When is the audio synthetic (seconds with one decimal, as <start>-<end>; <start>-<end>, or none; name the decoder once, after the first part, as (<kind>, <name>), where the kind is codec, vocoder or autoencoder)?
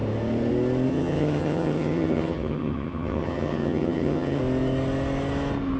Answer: 0.9-4.4 (vocoder, HiFi-GAN)